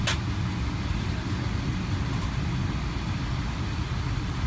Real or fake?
real